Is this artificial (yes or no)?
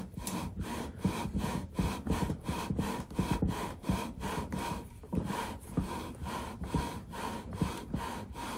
yes